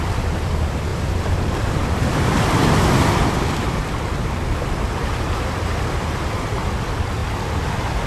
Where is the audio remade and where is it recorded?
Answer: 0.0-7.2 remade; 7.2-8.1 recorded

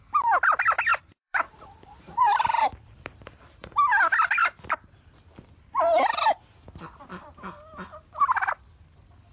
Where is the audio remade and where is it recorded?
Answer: 0.0-0.9 recorded; 0.9-4.0 remade; 4.0-9.3 recorded

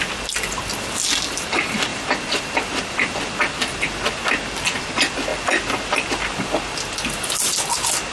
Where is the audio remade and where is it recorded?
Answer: 0.0-1.9 recorded; 1.9-3.3 remade; 3.3-5.3 recorded; 5.3-7.4 remade; 7.4-8.1 recorded

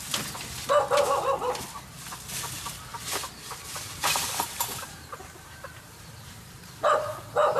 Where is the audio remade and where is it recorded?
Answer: 0.0-2.9 recorded; 2.9-6.6 remade; 6.6-7.6 recorded

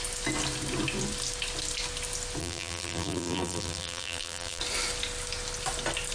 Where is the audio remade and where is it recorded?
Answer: 0.0-2.4 recorded; 2.4-4.6 remade; 4.6-6.1 recorded

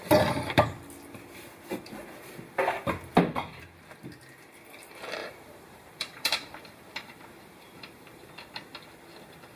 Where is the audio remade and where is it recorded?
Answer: 0.0-5.2 recorded; 5.2-8.3 remade; 8.3-9.6 recorded